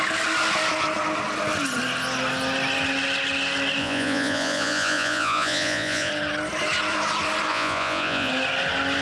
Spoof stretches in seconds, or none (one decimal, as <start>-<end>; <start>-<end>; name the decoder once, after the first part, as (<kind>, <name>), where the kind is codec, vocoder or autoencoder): 3.8-6.1 (vocoder, Vocos); 7.5-8.3